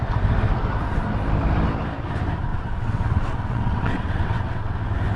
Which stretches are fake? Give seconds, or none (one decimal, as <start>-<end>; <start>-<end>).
2.5-4.8